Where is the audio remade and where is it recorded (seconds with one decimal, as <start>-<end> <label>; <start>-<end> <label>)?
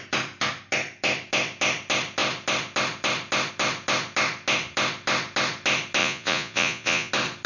0.0-6.0 recorded; 6.0-7.1 remade; 7.1-7.5 recorded